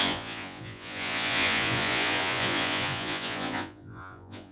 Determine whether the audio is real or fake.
fake